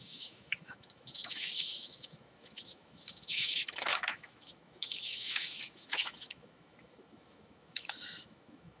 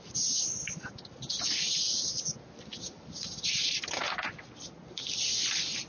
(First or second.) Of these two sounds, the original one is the second